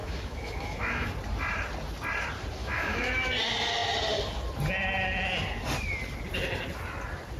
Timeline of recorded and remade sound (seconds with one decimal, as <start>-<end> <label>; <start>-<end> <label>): 0.0-1.1 remade; 1.1-2.6 recorded; 2.6-3.3 remade; 3.3-7.4 recorded